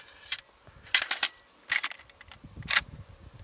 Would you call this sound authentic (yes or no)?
yes